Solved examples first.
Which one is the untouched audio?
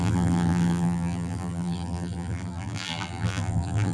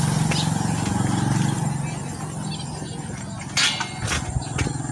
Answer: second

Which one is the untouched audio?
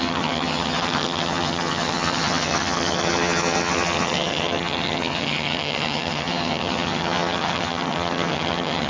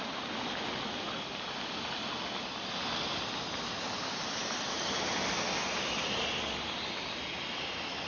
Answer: second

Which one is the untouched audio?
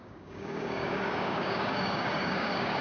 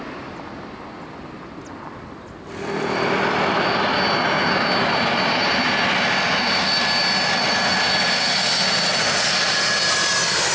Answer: second